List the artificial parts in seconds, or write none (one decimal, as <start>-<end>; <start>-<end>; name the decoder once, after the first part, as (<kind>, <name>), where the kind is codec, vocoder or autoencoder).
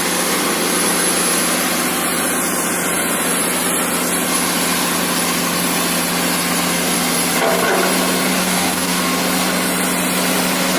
8.4-9.0 (codec, DAC)